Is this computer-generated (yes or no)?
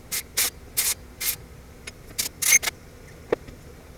no